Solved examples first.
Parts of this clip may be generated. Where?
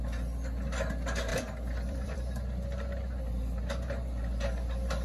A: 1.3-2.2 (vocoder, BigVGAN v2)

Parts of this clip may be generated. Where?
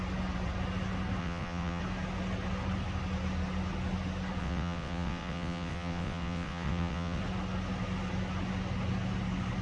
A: 1.2-1.8 (vocoder, WaveNeXt); 4.4-7.2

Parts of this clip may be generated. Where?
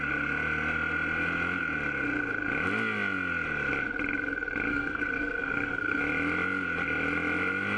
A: 4.7-6.0 (codec, SNAC)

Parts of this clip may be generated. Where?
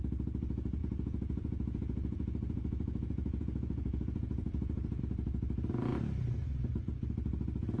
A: 0.8-5.0 (vocoder, Vocos)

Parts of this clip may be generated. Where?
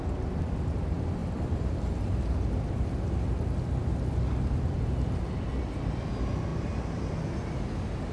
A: 6.5-7.1 (vocoder, BigVGAN v2)